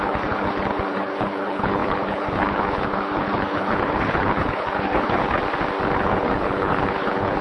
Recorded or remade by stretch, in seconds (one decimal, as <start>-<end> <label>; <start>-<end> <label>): 0.0-5.4 remade; 5.4-6.0 recorded; 6.0-7.4 remade